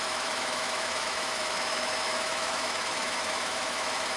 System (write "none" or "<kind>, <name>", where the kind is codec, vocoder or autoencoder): autoencoder, DAC-VAE